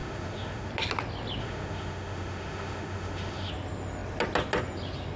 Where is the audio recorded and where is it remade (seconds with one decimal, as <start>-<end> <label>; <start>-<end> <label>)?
0.0-0.7 remade; 0.7-1.4 recorded; 1.4-3.5 remade; 3.5-5.2 recorded